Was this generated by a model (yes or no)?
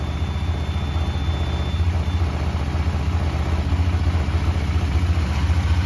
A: no